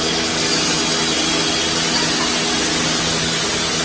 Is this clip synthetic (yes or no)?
no